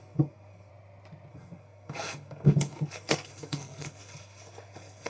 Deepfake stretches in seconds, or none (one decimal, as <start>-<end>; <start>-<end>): 0.0-0.7; 1.3-5.1